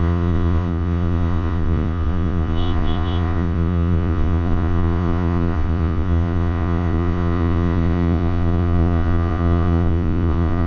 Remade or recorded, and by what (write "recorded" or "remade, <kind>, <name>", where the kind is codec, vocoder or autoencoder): remade, vocoder, Vocos